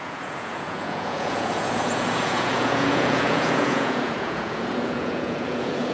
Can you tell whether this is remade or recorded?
remade